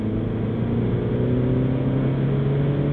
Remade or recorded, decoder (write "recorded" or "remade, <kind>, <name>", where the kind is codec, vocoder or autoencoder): recorded